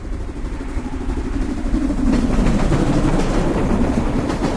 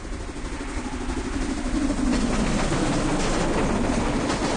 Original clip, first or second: second